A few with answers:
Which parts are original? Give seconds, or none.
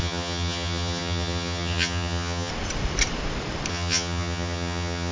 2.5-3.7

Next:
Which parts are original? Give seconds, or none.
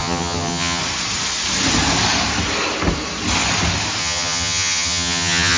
0.8-4.0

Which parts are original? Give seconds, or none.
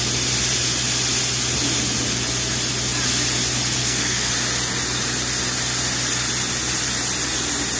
0.0-3.8; 4.3-7.8